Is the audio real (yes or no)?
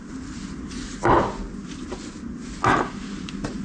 yes